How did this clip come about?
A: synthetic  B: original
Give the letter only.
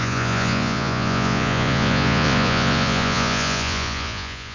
A